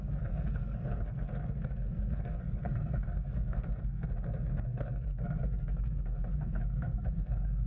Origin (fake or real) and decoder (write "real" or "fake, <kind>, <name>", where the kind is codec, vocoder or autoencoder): fake, codec, SNAC